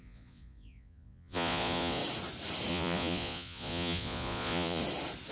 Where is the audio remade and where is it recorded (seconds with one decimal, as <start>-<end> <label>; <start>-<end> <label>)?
0.0-2.0 remade; 2.0-2.7 recorded; 2.7-4.8 remade; 4.8-5.3 recorded